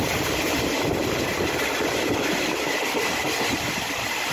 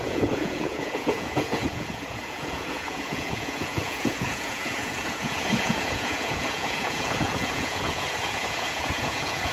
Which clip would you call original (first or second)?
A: first